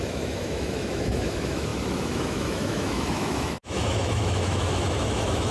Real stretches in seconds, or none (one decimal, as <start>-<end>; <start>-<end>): none